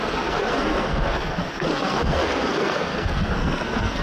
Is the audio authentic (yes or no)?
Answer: no